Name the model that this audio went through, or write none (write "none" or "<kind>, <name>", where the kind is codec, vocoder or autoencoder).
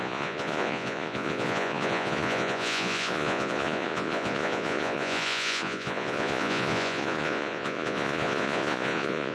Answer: vocoder, Vocos